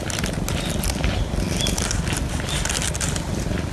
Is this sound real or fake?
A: real